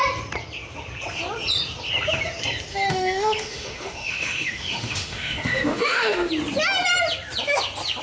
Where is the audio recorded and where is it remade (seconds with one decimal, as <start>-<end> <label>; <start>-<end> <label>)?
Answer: 0.0-2.7 recorded; 2.7-6.3 remade; 6.3-8.0 recorded